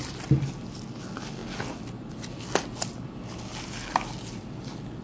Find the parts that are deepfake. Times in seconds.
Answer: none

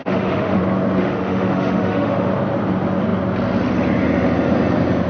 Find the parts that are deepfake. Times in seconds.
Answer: 0.0-0.6 (autoencoder, DAC-VAE); 1.0-2.3